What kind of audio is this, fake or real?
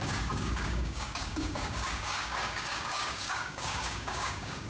fake